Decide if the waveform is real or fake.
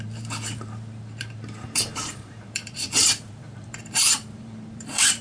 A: fake